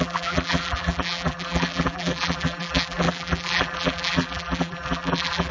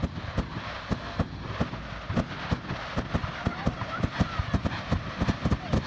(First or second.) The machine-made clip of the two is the first